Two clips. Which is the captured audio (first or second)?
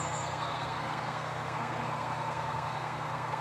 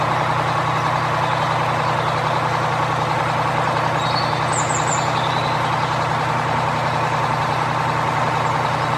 second